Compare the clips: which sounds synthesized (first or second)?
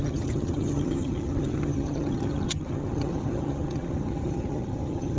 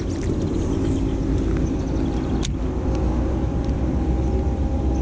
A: first